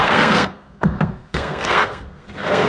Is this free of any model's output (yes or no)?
no